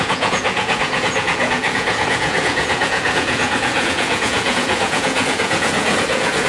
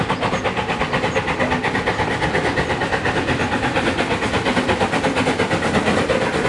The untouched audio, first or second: second